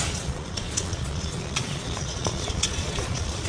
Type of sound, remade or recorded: remade